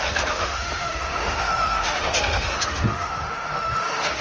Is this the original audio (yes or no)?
no